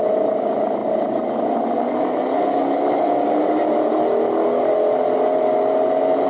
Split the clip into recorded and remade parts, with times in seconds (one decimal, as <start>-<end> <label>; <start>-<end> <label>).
0.0-6.3 recorded